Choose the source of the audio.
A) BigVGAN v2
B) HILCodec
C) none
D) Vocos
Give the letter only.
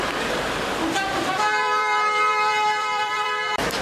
A